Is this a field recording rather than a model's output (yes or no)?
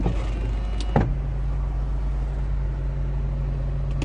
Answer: yes